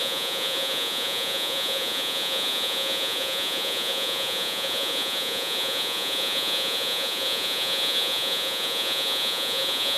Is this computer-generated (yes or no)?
yes